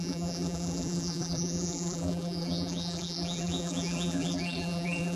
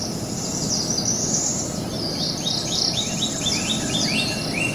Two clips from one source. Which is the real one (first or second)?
second